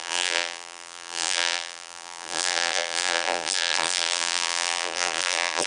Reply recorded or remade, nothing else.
remade